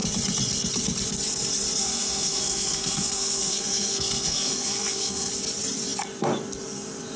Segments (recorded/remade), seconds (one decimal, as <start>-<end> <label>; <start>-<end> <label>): 0.0-1.8 recorded; 1.8-5.3 remade; 5.3-7.2 recorded